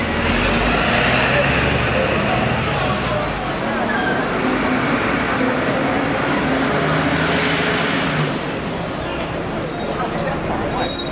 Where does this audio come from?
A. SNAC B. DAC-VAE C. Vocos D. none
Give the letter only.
D